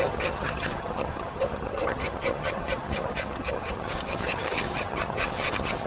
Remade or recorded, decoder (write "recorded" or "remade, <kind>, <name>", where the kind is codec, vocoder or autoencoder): remade, vocoder, HiFi-GAN